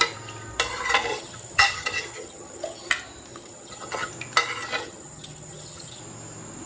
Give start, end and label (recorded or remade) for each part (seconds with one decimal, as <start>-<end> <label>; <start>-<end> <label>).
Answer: 0.0-1.1 recorded; 1.1-2.9 remade; 2.9-3.3 recorded; 3.3-4.1 remade; 4.1-4.8 recorded; 4.8-6.0 remade; 6.0-6.7 recorded